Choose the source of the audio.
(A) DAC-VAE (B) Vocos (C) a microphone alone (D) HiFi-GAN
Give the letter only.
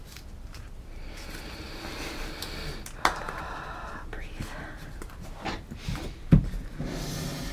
C